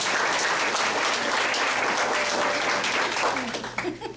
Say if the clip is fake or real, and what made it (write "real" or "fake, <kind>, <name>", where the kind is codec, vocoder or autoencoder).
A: real